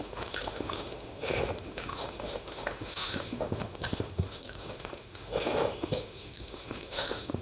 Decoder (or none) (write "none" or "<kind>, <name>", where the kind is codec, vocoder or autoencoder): autoencoder, DAC-VAE